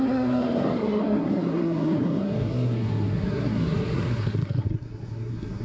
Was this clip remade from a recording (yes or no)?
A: yes